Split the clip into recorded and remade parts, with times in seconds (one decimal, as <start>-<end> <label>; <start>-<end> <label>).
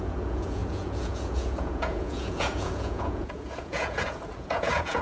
0.0-5.0 remade